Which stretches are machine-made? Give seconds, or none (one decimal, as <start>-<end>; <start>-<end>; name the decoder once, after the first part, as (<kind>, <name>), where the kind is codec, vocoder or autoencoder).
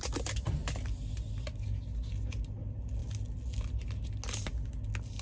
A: none